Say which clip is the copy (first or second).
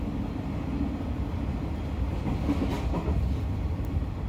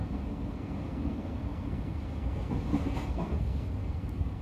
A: second